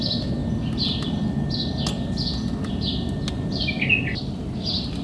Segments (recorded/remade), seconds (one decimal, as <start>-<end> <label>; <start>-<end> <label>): 0.0-5.0 recorded